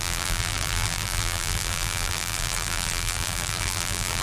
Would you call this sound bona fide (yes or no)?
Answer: no